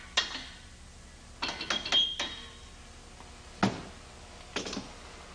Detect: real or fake real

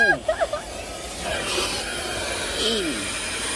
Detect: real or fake real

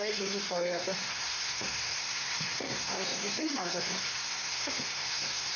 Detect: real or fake fake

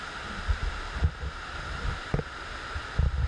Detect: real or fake real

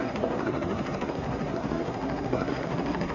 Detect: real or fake fake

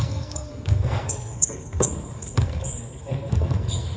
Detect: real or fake fake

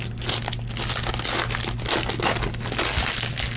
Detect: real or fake real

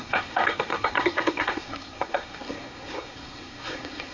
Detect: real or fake fake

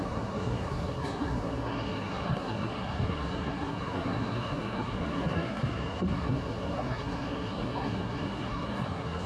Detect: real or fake fake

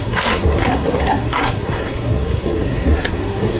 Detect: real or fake fake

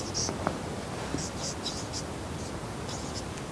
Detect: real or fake real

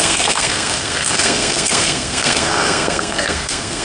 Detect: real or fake fake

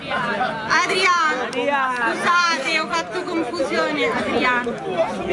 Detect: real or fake real